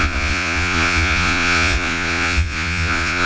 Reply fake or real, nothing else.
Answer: fake